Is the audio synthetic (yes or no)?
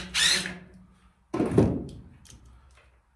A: no